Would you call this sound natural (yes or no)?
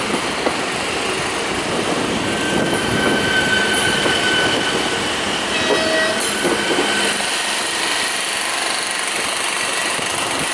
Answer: yes